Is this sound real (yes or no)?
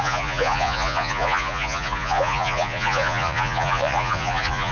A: no